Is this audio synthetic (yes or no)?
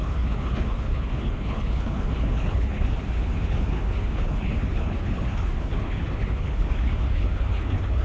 yes